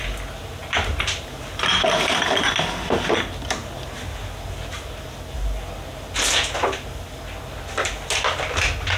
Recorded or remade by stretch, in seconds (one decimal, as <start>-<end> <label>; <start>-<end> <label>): 0.0-0.6 recorded; 0.6-2.5 remade; 2.5-9.0 recorded